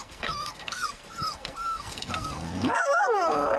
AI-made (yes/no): yes